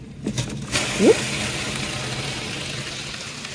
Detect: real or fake real